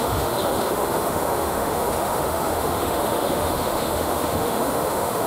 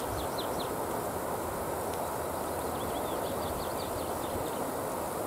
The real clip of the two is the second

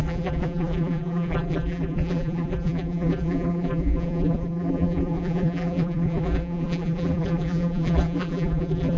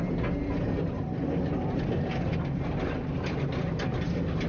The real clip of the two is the second